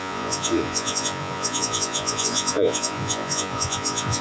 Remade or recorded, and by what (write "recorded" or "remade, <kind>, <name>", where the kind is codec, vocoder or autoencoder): remade, vocoder, Vocos